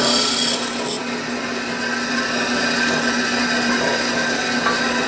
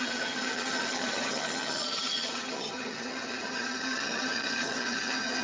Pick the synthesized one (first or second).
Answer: second